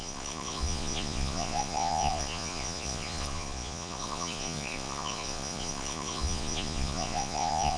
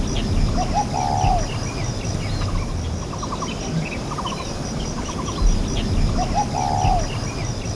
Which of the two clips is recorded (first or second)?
second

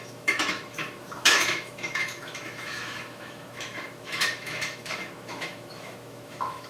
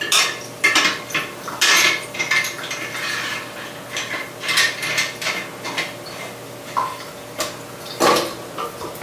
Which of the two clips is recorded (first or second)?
second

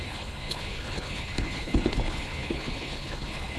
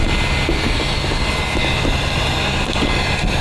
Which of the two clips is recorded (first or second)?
second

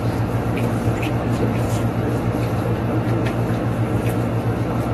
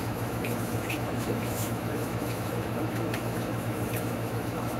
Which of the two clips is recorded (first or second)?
first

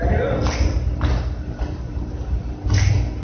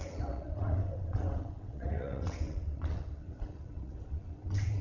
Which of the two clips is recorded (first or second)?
first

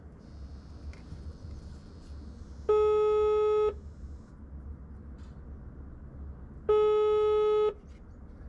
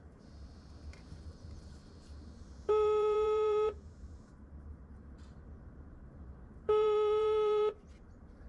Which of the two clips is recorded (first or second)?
first